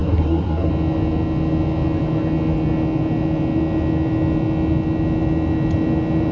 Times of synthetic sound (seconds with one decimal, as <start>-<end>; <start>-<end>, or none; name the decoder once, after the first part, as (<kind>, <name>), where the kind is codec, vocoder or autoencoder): 0.0-0.7 (codec, SNAC)